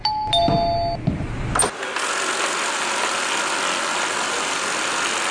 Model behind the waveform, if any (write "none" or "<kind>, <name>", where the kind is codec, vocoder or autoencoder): none